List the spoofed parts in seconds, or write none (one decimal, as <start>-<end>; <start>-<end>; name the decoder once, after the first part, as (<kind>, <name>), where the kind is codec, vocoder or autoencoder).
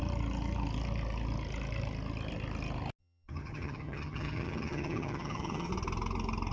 3.0-5.7 (vocoder, HiFi-GAN)